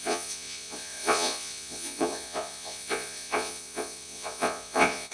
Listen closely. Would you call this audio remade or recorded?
remade